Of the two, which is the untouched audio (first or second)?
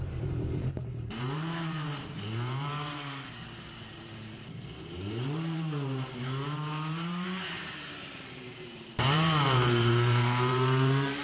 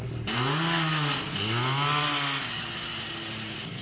second